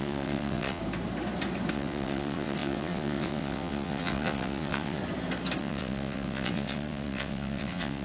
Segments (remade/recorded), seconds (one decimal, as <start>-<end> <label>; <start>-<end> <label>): 0.0-0.8 remade; 0.8-1.7 recorded; 1.7-5.0 remade; 5.0-5.6 recorded; 5.6-8.0 remade